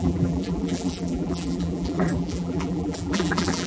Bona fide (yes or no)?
no